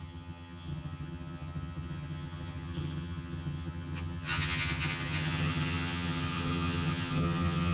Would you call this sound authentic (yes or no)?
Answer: no